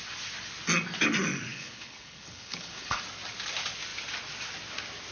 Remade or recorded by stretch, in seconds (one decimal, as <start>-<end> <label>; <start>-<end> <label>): 0.0-1.5 recorded; 1.5-3.0 remade; 3.0-5.1 recorded